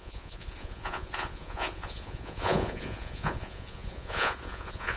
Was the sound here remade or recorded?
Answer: remade